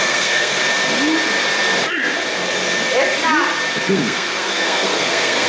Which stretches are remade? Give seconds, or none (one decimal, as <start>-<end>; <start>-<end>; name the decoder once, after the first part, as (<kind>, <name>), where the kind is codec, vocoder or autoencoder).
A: 0.0-0.6 (codec, SNAC); 3.9-5.5